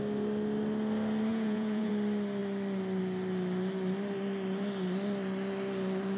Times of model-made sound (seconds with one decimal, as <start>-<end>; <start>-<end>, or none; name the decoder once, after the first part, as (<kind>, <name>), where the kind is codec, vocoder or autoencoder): 1.3-1.9 (vocoder, Vocos)